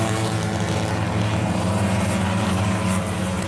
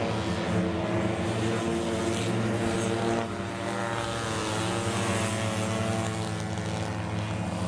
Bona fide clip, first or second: second